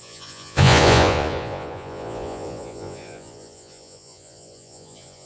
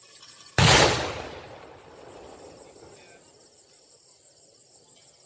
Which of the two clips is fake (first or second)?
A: first